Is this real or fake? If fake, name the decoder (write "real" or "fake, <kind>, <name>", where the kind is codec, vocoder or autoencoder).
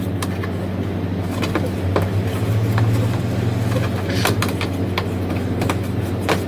real